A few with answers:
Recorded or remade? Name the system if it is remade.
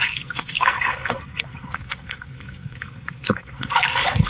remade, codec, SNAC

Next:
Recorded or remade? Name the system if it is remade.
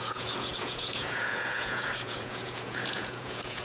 remade, vocoder, Vocos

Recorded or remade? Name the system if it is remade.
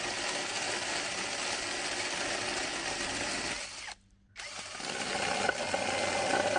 recorded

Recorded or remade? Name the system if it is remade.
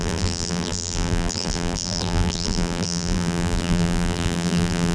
remade, vocoder, BigVGAN v2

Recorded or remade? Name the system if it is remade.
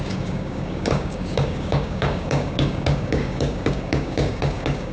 remade, codec, DAC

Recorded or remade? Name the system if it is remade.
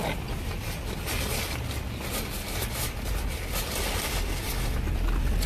recorded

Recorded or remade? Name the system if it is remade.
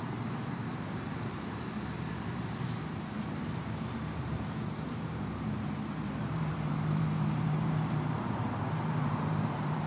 remade, vocoder, BigVGAN v2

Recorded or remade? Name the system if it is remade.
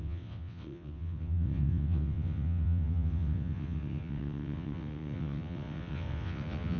remade, vocoder, WaveNeXt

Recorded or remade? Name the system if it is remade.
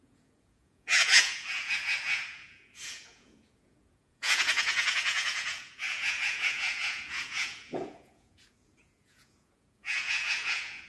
remade, vocoder, Vocos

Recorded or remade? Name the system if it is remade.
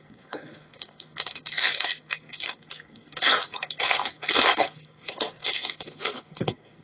remade, codec, SNAC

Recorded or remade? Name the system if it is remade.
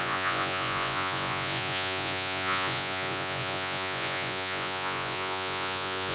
remade, vocoder, Vocos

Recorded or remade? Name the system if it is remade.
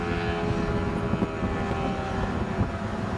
recorded